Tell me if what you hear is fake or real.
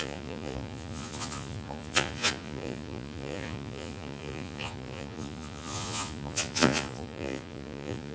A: fake